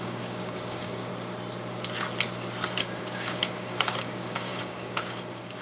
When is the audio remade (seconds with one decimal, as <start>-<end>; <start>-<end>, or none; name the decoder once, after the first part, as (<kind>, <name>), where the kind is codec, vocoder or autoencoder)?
0.0-1.1 (codec, DAC); 3.0-5.6